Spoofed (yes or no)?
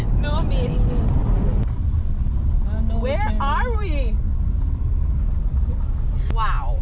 no